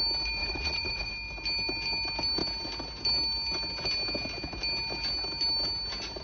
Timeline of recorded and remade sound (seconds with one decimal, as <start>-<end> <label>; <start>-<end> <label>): 0.0-0.4 recorded; 0.4-1.1 remade; 1.1-6.2 recorded